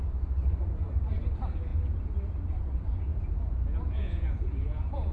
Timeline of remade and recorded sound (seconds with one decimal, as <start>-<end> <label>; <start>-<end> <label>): 0.0-3.1 recorded; 3.1-5.1 remade